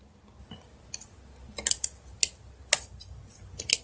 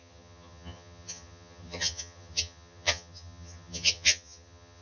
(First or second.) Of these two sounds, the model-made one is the second